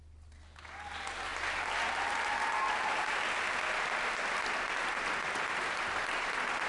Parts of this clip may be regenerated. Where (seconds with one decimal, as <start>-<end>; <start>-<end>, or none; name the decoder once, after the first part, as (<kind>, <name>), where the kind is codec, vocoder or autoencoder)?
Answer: none